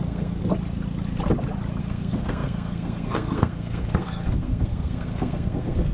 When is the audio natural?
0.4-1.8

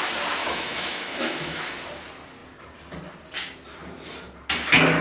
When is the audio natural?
0.0-0.4; 1.6-5.0

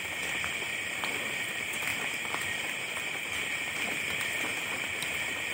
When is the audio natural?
1.9-4.2

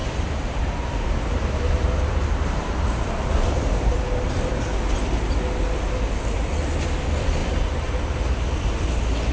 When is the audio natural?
4.5-9.3

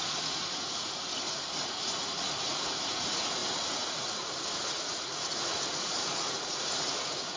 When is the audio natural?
none